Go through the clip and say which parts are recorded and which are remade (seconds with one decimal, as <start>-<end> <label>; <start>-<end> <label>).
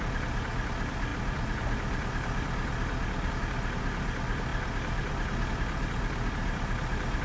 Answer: 0.0-7.2 recorded